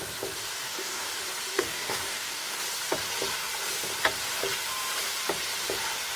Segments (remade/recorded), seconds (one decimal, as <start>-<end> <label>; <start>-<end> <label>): 0.0-0.6 recorded; 0.6-1.1 remade; 1.1-1.5 recorded; 1.5-2.6 remade; 2.6-6.2 recorded